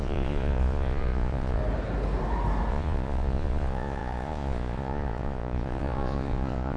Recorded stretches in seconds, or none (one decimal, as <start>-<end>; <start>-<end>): 1.6-2.7